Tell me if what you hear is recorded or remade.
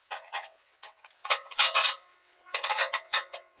remade